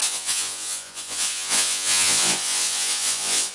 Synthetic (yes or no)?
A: yes